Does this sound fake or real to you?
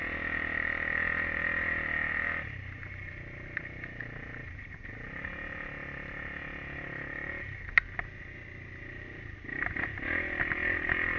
real